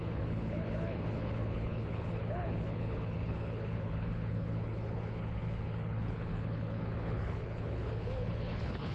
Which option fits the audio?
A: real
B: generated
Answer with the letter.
B